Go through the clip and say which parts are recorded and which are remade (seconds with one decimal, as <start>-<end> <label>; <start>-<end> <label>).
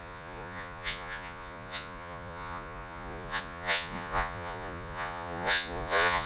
0.0-6.3 remade